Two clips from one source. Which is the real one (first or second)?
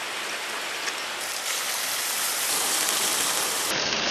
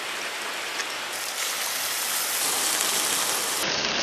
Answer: second